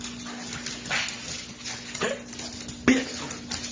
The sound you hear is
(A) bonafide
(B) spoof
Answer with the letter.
A